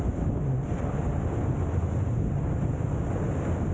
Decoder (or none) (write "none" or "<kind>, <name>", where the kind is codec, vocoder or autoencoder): none